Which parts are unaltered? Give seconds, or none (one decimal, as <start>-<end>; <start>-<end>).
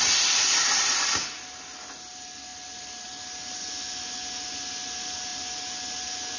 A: 0.0-2.5; 3.1-6.4